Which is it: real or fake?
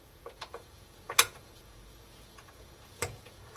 fake